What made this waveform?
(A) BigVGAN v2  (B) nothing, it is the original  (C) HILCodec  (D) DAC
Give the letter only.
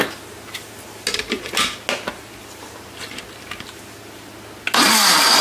B